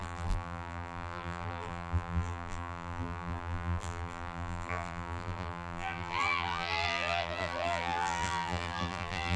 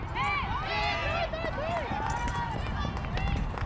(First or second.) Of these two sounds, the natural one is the second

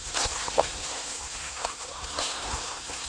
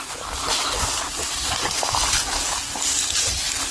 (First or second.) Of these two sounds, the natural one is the second